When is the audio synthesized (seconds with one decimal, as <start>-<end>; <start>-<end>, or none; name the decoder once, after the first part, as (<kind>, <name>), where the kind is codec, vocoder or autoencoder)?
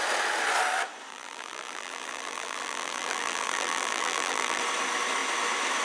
1.1-4.6 (vocoder, BigVGAN v2)